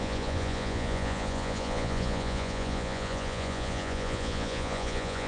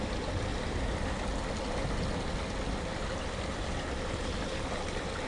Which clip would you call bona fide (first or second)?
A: second